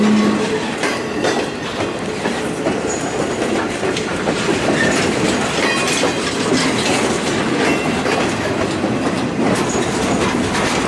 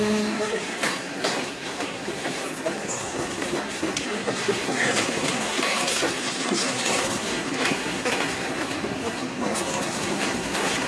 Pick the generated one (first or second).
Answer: second